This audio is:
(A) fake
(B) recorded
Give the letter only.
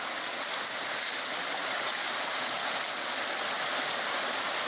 B